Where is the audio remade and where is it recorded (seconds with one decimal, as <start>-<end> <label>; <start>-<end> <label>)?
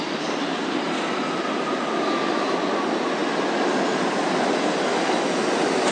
0.0-5.9 recorded